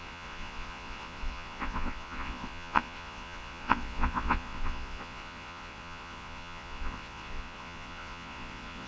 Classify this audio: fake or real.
fake